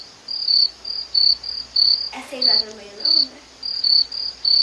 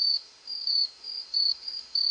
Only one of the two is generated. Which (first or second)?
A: second